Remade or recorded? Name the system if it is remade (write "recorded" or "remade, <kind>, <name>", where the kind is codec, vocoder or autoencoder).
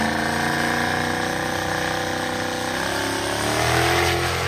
recorded